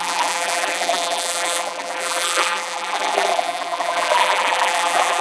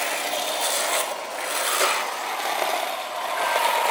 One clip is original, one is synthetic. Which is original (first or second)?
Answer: second